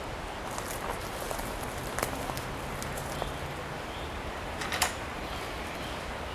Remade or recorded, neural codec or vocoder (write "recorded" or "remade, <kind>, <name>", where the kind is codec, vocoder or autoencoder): remade, vocoder, BigVGAN v2